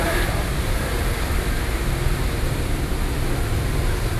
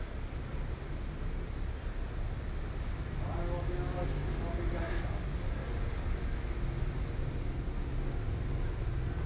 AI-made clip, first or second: first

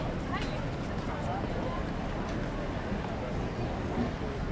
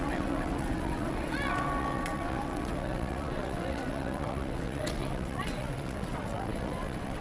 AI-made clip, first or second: second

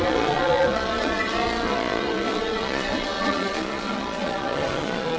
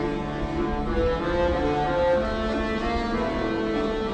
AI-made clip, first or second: first